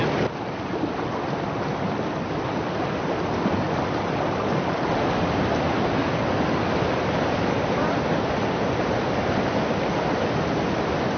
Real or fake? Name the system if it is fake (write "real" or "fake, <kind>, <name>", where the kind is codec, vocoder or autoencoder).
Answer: real